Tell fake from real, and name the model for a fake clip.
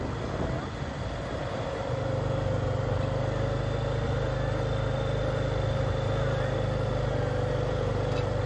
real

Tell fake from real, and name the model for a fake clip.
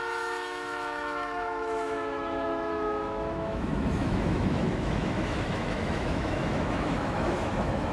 fake, autoencoder, DAC-VAE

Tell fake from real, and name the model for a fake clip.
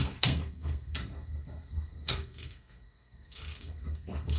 fake, codec, SNAC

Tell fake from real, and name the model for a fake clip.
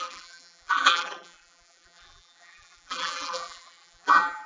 fake, vocoder, BigVGAN v2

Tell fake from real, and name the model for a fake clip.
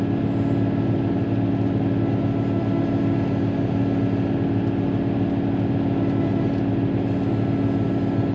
real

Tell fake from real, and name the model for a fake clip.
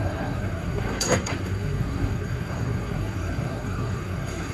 fake, codec, SNAC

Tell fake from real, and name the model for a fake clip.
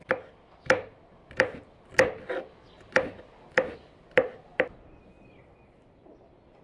real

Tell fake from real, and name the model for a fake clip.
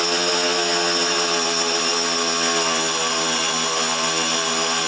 real